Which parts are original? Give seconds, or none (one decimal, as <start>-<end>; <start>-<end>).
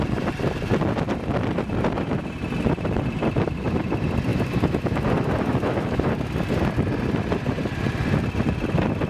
0.0-4.3; 6.1-9.1